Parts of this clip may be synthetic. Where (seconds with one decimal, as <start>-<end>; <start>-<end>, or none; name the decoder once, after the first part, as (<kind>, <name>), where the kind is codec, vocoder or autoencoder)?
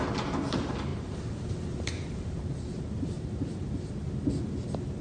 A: 0.9-3.9 (vocoder, BigVGAN v2)